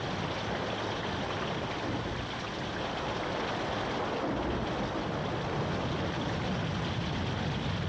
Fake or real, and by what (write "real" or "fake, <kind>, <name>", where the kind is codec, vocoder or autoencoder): real